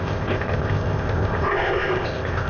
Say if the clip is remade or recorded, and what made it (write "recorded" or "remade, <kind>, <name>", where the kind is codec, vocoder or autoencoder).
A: remade, codec, ZipCodec